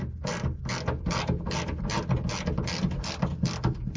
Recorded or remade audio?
recorded